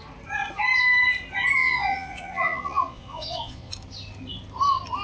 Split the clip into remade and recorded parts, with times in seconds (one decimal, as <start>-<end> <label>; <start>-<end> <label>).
0.0-1.6 recorded; 1.6-3.7 remade; 3.7-5.0 recorded